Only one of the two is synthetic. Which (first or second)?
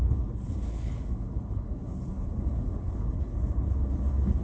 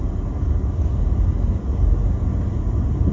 first